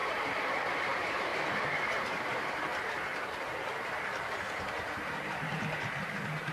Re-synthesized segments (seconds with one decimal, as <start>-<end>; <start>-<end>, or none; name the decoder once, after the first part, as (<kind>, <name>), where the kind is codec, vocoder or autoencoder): 0.5-6.5 (vocoder, BigVGAN v2)